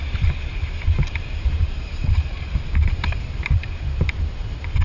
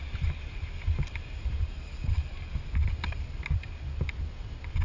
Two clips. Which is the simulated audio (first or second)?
first